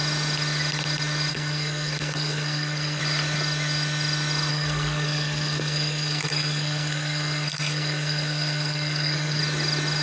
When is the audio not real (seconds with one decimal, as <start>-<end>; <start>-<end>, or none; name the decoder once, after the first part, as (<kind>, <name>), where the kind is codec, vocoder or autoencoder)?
1.3-3.0 (codec, SNAC); 4.5-9.4